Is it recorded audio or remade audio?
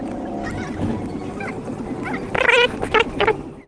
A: recorded